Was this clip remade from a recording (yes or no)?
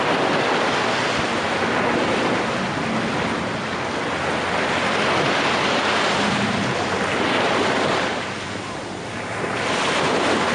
no